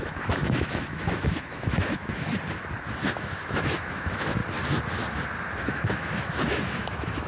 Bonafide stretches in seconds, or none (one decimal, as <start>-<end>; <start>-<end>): 2.3-3.0; 4.4-5.6